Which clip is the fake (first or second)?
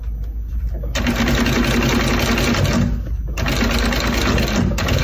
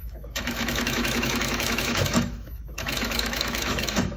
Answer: second